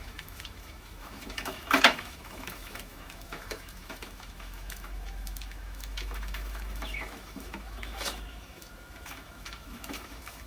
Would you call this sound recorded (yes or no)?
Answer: no